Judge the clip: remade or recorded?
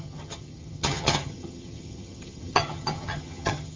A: remade